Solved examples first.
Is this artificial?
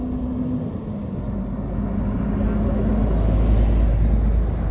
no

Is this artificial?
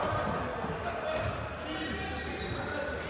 no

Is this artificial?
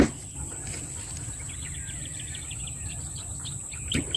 no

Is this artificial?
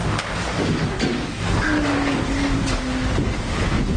yes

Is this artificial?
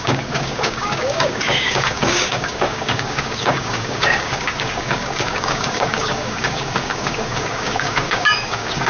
yes